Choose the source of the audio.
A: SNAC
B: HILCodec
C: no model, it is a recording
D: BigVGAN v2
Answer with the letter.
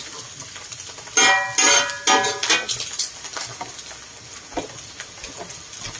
C